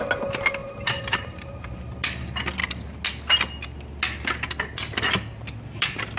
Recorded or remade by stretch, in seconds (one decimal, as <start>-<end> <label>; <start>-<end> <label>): 0.0-0.6 recorded; 0.6-1.7 remade; 1.7-6.2 recorded